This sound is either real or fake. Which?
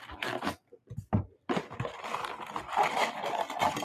real